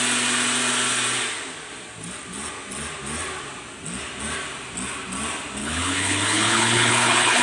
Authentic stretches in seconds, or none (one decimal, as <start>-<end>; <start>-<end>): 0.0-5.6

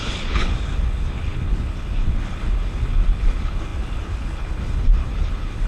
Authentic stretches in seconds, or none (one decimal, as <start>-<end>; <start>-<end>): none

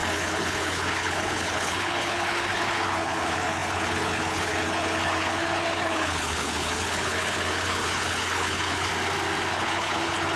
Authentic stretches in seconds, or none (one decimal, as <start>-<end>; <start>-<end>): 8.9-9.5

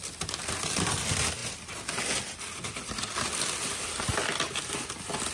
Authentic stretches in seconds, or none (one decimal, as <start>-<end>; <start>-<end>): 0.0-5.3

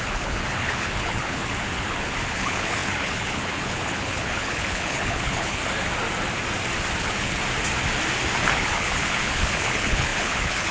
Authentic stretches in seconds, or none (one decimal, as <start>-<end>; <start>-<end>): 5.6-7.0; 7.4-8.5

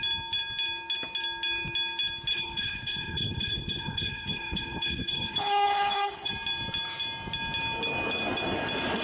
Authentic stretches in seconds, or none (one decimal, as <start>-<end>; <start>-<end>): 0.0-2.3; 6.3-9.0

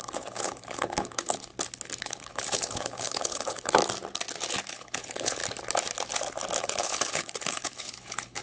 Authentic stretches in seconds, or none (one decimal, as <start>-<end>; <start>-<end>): 1.5-2.0; 3.8-4.7; 5.4-6.6

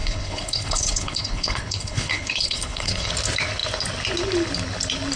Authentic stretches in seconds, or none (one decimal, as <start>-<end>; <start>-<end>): 3.1-5.2